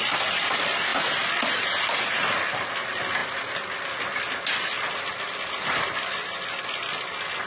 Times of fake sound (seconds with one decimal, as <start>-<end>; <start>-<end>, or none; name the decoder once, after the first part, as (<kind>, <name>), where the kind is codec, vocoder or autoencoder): none